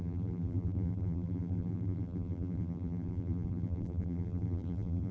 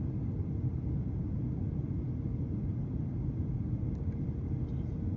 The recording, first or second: second